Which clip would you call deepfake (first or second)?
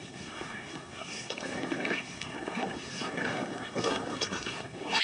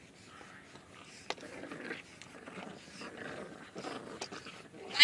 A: first